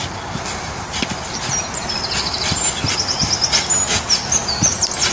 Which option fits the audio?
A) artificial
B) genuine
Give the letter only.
B